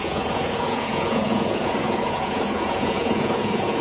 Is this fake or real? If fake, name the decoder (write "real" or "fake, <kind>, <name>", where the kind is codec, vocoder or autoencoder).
fake, vocoder, Vocos